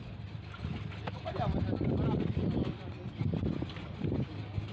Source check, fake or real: real